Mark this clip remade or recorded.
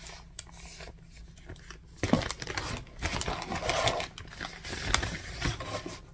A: recorded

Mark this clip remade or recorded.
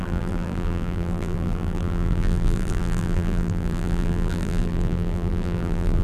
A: remade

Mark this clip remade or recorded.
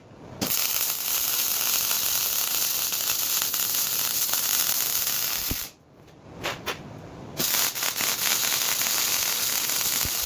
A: recorded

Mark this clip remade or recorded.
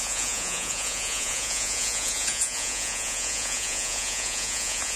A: remade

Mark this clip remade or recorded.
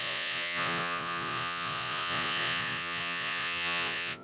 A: remade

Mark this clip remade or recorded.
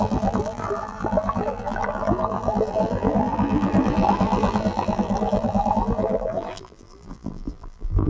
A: remade